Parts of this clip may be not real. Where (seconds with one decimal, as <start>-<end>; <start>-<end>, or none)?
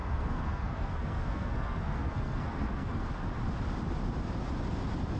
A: 0.0-3.1